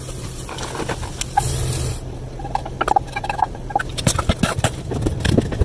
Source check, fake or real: real